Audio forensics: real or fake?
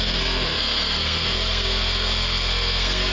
fake